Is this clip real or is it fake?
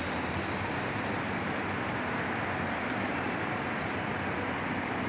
real